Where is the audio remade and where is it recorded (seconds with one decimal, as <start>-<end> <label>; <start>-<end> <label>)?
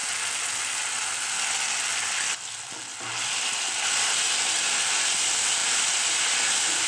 0.0-6.9 recorded